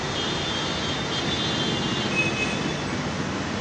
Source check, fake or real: real